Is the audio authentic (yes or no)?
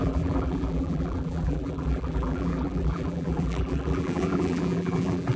no